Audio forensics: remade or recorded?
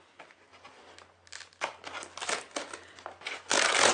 recorded